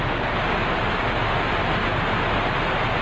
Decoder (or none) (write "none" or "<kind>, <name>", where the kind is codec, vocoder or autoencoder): none